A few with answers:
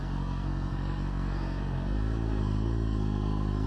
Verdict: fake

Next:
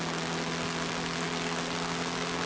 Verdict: real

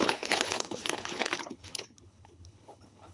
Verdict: fake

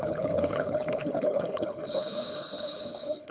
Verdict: fake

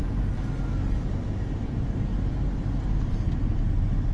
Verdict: real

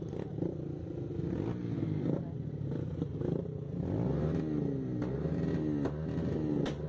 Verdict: real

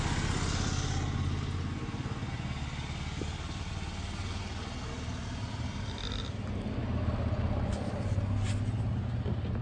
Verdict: real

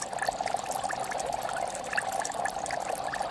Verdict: real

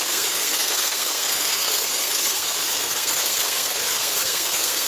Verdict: fake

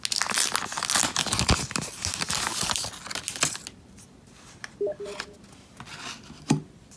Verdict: real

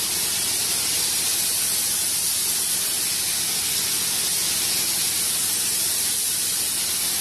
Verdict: real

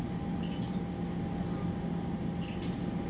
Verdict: real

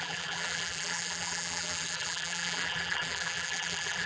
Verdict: fake